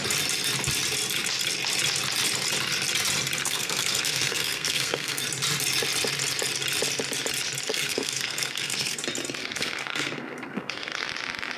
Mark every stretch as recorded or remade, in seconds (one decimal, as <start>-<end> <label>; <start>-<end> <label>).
0.0-3.4 recorded; 3.4-5.2 remade; 5.2-7.7 recorded; 7.7-9.0 remade; 9.0-9.4 recorded; 9.4-11.1 remade; 11.1-11.6 recorded